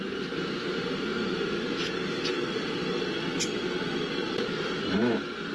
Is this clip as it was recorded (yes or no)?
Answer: yes